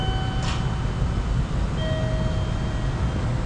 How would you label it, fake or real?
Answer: real